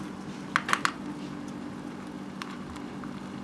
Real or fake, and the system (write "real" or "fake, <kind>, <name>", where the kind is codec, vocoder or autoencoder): real